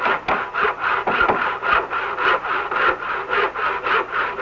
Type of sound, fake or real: real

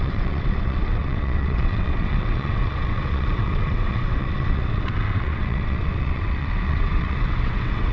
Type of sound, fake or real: fake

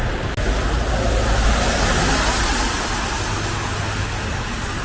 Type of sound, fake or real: real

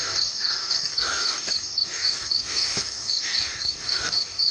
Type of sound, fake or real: fake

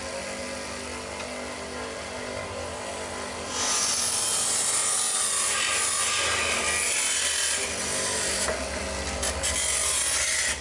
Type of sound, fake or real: real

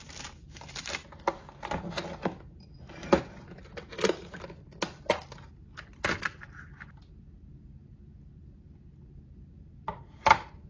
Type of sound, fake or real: real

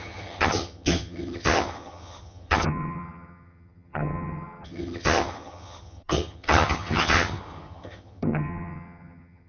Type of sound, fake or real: fake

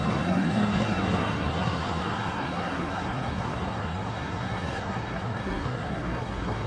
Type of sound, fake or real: fake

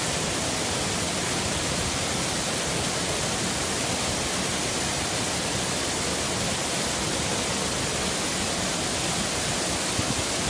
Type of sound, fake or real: real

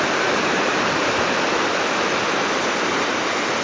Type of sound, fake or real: real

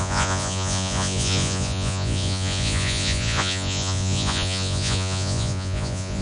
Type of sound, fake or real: fake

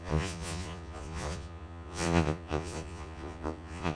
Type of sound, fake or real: fake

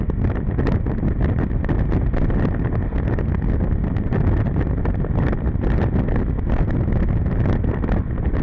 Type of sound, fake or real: real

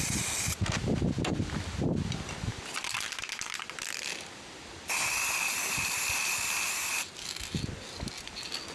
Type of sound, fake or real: real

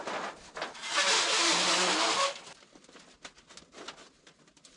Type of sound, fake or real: real